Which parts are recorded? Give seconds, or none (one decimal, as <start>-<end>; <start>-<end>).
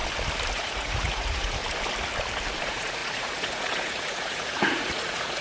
0.0-0.5; 1.6-2.6